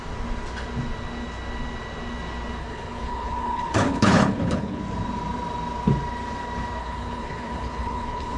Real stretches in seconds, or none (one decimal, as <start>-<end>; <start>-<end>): 0.0-2.6; 4.8-6.8